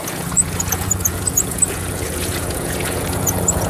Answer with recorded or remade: remade